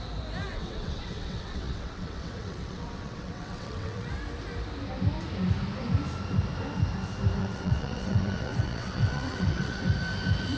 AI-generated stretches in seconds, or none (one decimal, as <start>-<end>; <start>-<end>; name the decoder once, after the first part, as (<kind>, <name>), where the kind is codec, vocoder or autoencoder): 0.5-4.1 (vocoder, WaveNeXt); 7.4-9.8